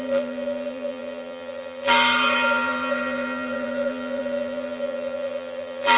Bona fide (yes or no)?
no